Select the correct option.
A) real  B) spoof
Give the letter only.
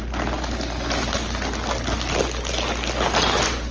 A